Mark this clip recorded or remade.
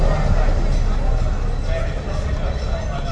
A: recorded